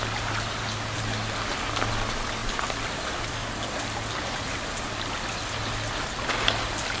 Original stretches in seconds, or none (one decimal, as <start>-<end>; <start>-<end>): 0.0-2.4; 3.5-7.0